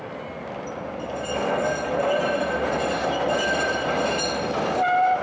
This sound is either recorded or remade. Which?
recorded